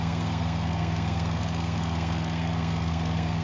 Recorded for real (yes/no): no